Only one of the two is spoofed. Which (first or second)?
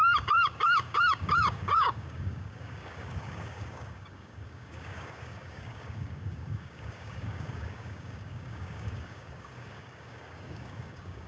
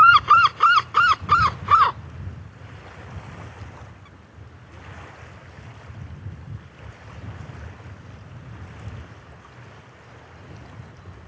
first